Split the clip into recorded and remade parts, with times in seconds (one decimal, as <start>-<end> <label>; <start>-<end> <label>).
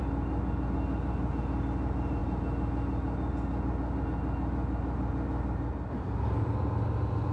0.0-7.3 recorded